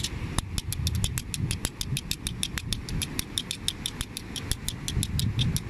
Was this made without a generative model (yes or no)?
yes